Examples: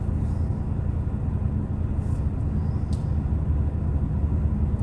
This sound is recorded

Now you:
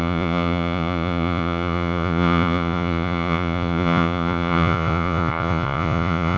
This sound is remade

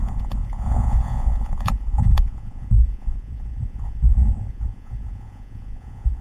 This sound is remade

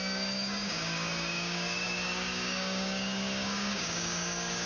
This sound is remade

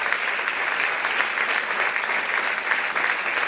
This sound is recorded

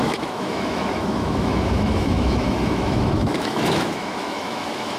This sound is remade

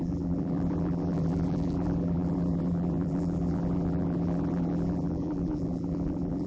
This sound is remade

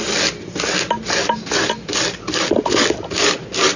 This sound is recorded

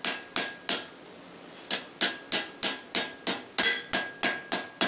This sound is recorded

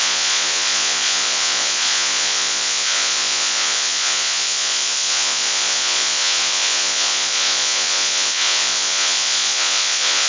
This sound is remade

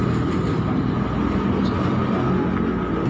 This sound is recorded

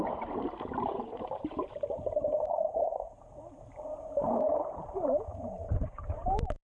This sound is remade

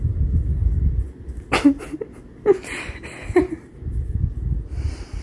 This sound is recorded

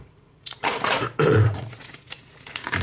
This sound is remade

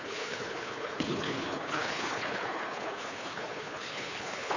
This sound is remade